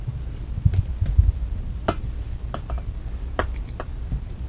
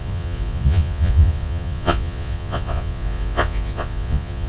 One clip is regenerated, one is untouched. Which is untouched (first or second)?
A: first